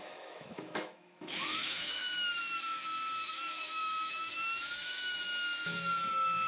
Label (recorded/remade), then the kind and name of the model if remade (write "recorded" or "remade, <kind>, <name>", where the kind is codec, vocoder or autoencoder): remade, autoencoder, DAC-VAE